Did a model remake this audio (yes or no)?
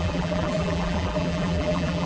yes